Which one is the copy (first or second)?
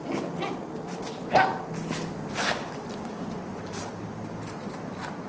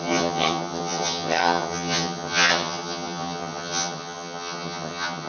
second